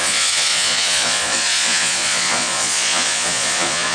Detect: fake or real fake